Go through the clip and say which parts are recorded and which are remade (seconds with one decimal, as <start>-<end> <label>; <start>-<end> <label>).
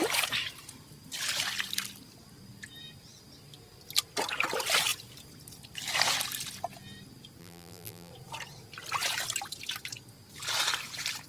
0.0-7.4 recorded; 7.4-8.1 remade; 8.1-11.3 recorded